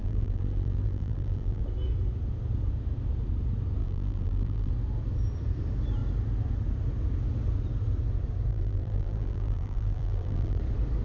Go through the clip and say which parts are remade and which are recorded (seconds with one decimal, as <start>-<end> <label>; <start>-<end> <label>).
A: 0.0-1.6 remade; 1.6-3.8 recorded; 3.8-4.7 remade; 4.7-8.5 recorded; 8.5-10.6 remade; 10.6-11.0 recorded